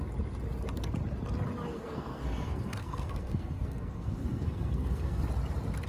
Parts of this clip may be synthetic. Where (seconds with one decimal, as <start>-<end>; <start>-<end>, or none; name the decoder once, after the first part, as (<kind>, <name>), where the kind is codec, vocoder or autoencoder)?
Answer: 1.7-5.2 (codec, SNAC)